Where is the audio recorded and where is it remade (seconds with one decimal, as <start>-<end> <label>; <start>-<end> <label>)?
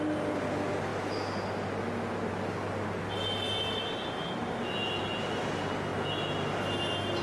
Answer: 0.0-7.2 recorded